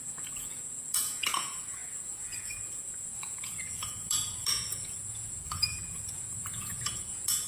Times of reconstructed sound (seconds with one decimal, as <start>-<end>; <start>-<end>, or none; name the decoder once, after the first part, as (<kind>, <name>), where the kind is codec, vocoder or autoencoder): 0.0-7.5 (vocoder, Vocos)